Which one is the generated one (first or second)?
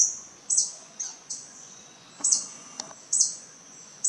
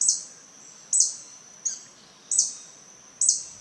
first